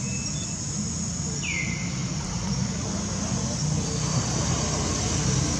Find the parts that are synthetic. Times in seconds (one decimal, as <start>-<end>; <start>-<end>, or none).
none